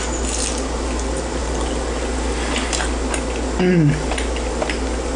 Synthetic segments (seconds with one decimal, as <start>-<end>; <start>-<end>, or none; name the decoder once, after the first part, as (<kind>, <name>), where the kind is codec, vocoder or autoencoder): none